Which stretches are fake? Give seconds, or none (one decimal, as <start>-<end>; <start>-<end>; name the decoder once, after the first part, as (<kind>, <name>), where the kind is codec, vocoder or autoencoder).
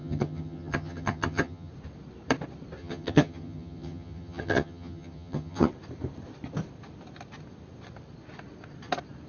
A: 0.0-1.7 (vocoder, HiFi-GAN); 2.8-5.7